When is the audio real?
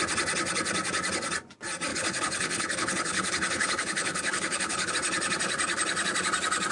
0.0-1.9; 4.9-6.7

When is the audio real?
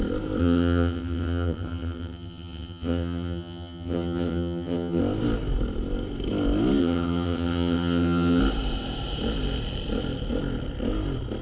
0.0-0.4; 5.0-6.8; 8.4-11.4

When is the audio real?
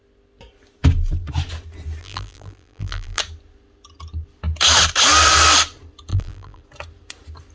0.0-2.0; 3.2-6.1; 6.6-7.5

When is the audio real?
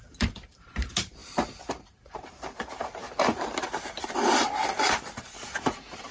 1.2-1.7